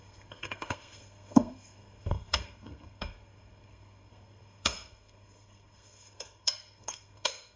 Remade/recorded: remade